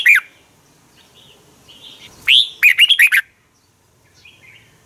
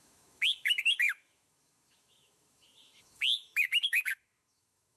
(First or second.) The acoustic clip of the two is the first